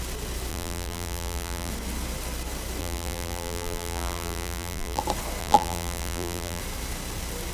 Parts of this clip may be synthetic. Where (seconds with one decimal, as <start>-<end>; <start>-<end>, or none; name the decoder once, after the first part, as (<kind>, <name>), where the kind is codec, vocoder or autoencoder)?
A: 0.5-1.7 (vocoder, BigVGAN v2); 2.8-5.0; 5.4-6.6

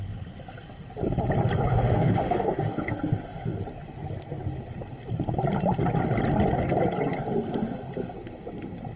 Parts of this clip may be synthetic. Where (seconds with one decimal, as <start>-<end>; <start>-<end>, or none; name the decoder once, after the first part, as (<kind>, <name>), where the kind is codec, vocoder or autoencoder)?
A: 1.7-2.9 (autoencoder, DAC-VAE)

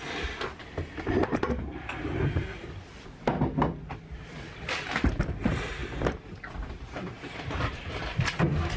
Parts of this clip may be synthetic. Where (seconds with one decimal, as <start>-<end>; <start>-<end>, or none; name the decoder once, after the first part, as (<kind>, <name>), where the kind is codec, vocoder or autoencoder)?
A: none

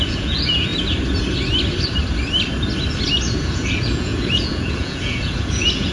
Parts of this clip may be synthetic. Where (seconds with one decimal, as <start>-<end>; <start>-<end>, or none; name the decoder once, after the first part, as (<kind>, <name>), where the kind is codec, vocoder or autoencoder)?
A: 0.0-0.7 (vocoder, Vocos); 3.3-5.9

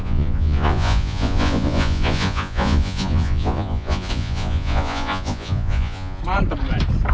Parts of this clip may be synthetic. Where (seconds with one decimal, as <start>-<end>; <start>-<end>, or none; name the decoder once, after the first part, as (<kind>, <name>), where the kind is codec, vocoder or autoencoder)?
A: 0.0-6.2 (vocoder, Vocos)

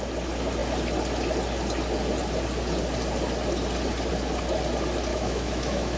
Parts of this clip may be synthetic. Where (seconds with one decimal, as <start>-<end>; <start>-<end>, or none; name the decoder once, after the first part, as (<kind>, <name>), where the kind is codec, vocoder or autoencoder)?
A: 5.1-6.0 (autoencoder, DAC-VAE)